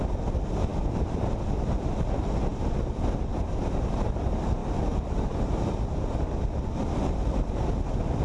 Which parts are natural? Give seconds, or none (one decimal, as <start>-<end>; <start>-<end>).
0.0-0.7; 1.3-2.5; 3.5-6.8; 7.6-8.2